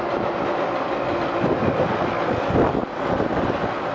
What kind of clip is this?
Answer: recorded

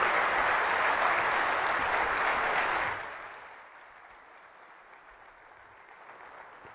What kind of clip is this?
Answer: recorded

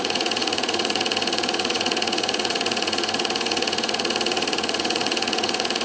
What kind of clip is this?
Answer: remade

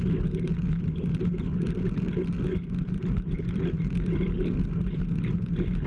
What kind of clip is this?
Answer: recorded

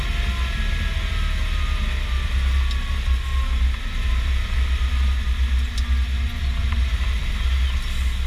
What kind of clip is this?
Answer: recorded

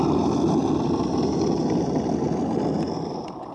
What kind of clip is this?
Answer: recorded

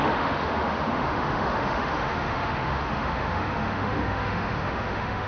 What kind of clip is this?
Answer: remade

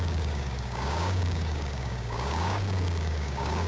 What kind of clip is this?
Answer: remade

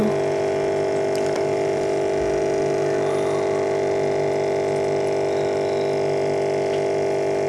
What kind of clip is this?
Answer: recorded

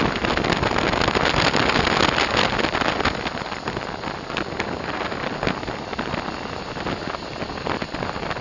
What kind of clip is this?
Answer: recorded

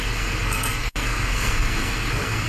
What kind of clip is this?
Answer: remade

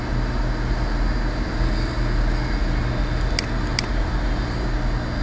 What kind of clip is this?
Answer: recorded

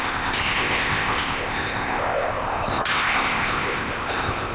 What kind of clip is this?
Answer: remade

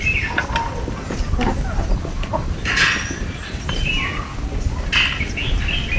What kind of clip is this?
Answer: recorded